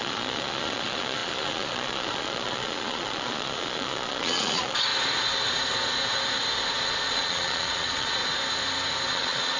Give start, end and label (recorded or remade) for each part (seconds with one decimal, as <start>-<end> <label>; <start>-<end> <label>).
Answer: 0.0-4.9 remade; 4.9-6.7 recorded; 6.7-8.2 remade; 8.2-9.1 recorded; 9.1-9.6 remade